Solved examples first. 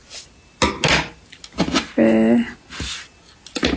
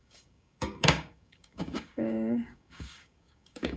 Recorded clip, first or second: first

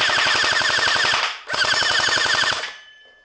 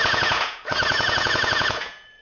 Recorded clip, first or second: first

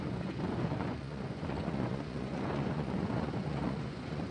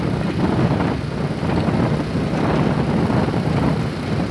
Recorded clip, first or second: second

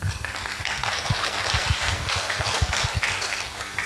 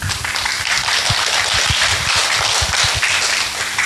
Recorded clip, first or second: second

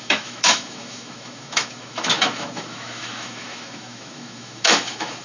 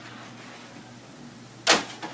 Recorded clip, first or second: second